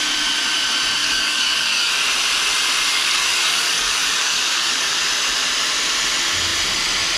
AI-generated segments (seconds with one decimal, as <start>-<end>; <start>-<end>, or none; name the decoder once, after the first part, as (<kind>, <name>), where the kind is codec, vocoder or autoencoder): 1.0-1.9 (codec, DAC); 2.9-5.0